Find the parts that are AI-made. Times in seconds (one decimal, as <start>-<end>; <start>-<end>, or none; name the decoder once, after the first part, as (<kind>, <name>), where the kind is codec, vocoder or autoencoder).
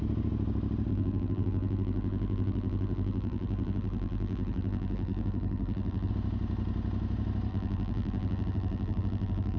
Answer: 0.9-6.1 (vocoder, BigVGAN v2); 7.5-9.6